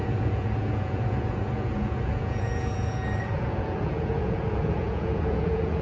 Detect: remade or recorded remade